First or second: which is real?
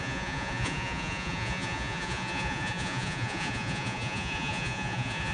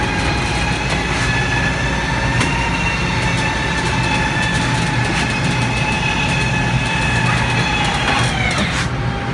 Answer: second